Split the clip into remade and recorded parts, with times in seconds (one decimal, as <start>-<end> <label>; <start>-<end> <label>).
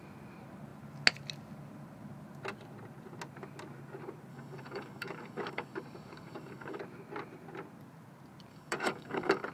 0.0-4.3 recorded; 4.3-6.8 remade; 6.8-8.5 recorded; 8.5-9.5 remade